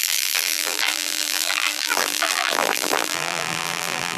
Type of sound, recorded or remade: remade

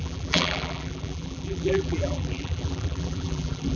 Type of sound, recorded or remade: remade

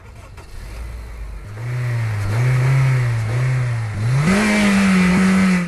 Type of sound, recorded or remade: recorded